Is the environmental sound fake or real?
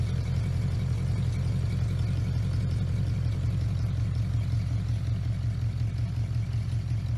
real